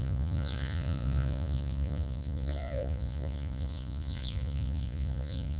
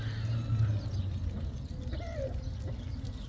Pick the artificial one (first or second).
first